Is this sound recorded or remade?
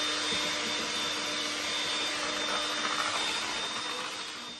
recorded